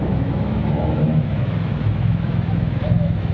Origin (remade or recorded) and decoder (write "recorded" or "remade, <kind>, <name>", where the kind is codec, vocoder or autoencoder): remade, autoencoder, DAC-VAE